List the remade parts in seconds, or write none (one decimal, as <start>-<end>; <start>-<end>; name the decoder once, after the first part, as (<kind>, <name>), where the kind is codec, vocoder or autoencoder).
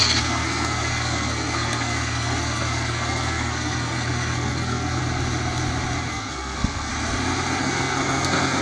0.0-5.0 (codec, SNAC); 6.1-6.9; 7.6-8.6